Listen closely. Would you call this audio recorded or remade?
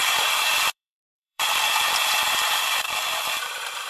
remade